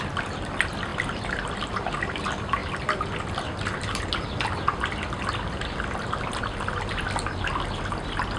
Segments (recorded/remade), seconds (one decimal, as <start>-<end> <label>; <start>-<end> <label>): 0.0-8.4 recorded